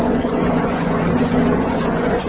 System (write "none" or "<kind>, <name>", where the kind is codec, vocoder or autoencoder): vocoder, Vocos